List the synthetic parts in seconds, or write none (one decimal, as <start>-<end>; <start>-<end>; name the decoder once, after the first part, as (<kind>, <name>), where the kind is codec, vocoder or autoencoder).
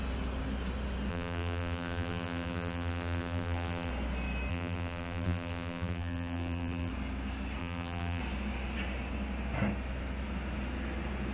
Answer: 1.1-3.9 (vocoder, BigVGAN v2); 4.5-6.9; 7.6-8.2